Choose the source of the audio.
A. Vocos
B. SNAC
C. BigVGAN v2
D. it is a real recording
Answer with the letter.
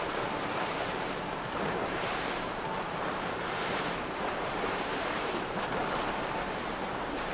C